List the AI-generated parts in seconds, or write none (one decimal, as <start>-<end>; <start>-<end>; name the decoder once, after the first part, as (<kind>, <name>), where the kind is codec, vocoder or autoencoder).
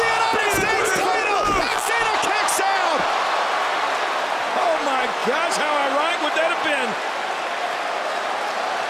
1.2-1.9 (vocoder, BigVGAN v2)